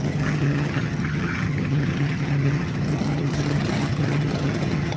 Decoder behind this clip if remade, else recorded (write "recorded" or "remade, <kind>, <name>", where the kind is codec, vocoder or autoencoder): remade, vocoder, HiFi-GAN